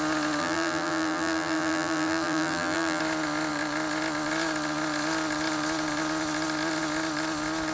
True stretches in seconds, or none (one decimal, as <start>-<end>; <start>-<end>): 0.0-0.4; 3.0-7.7